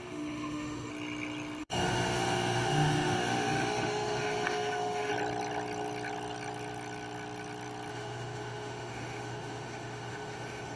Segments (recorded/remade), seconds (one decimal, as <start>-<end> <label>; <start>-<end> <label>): 0.0-0.9 remade; 0.9-1.6 recorded; 1.6-5.1 remade; 5.1-7.9 recorded; 7.9-10.8 remade